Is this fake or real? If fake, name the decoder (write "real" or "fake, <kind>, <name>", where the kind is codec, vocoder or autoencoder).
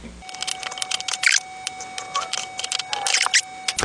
real